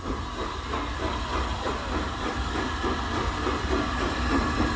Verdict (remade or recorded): recorded